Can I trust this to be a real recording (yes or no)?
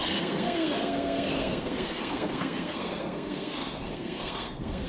no